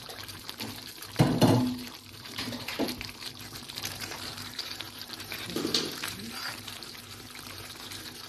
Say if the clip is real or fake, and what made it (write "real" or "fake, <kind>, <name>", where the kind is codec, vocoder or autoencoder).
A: fake, vocoder, BigVGAN v2